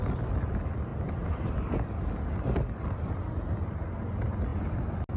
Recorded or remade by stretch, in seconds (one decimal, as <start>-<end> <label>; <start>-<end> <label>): 0.0-5.2 recorded